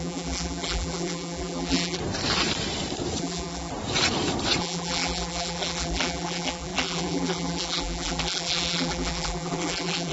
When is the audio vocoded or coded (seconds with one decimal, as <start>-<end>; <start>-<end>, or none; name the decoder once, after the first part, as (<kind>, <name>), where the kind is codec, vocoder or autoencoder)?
0.0-2.0 (vocoder, BigVGAN v2); 3.2-3.7; 4.6-10.1